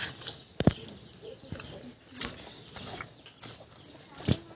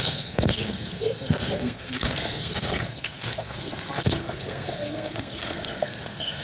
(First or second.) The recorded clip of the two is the first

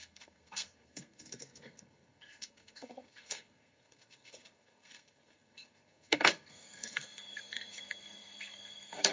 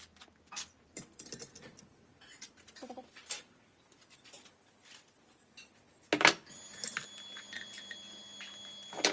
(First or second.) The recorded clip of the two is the second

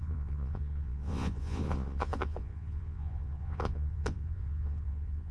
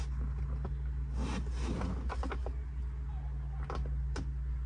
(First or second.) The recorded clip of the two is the second